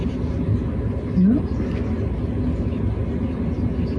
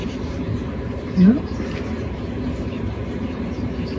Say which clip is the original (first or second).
first